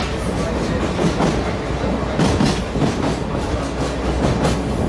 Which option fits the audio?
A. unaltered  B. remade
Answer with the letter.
A